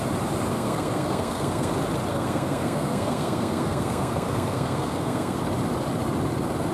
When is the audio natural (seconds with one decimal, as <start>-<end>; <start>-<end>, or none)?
0.0-0.5; 1.7-2.1; 5.4-6.7